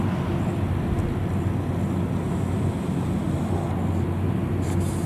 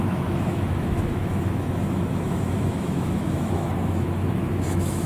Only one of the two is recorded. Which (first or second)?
first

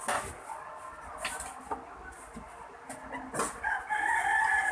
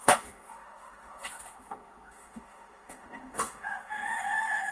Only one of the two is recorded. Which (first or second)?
first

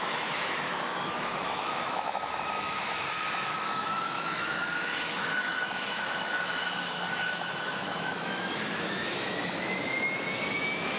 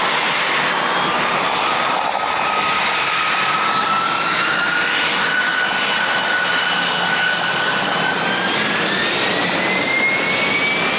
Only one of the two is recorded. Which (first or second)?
second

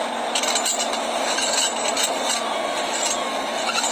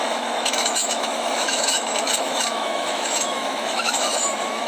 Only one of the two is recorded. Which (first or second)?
first